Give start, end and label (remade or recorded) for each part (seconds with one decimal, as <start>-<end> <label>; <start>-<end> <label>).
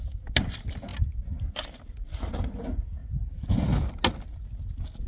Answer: 0.0-5.1 recorded